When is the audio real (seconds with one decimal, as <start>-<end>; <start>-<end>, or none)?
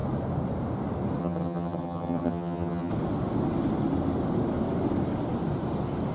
0.0-1.2; 2.9-6.1